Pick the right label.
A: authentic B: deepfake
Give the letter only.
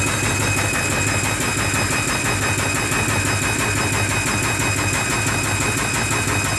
A